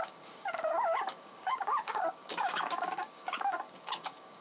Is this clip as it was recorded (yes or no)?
no